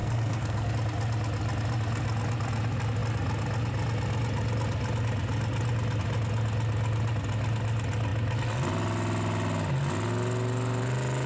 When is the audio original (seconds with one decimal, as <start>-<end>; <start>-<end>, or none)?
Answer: 0.7-11.3